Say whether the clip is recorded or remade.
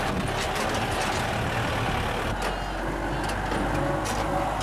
recorded